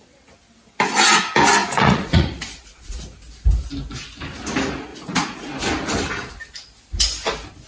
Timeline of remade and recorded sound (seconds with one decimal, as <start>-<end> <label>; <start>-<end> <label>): 0.0-1.6 recorded; 1.6-3.0 remade; 3.0-4.9 recorded; 4.9-5.5 remade; 5.5-7.7 recorded

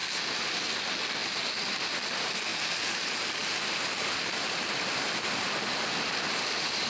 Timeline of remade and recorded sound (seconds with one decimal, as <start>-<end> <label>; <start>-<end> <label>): 0.0-0.6 remade; 0.6-2.5 recorded; 2.5-3.0 remade; 3.0-3.4 recorded; 3.4-6.9 remade